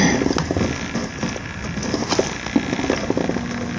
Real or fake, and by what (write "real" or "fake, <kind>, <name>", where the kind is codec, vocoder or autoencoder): real